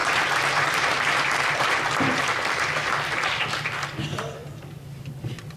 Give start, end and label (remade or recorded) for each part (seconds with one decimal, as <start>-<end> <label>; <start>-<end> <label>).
0.0-3.4 remade; 3.4-4.4 recorded; 4.4-5.6 remade